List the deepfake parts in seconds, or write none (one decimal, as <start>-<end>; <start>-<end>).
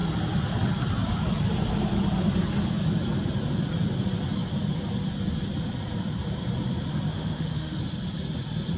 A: 7.1-7.8